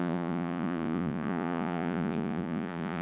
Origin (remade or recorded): remade